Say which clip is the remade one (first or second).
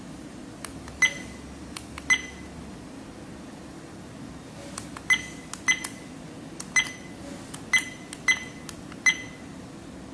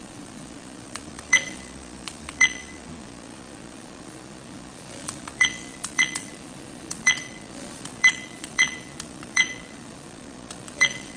second